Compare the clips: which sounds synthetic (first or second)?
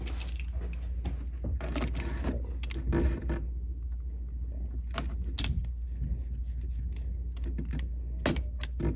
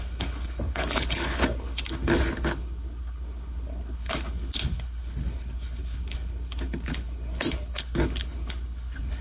second